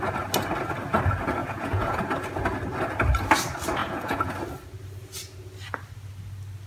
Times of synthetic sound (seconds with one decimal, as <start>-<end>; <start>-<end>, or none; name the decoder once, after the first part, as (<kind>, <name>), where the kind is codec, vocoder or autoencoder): 1.4-2.0 (vocoder, Vocos); 3.8-4.3